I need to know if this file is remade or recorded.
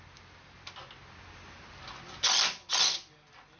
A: recorded